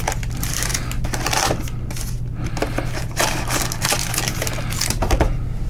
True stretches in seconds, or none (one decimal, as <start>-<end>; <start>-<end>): 0.0-5.7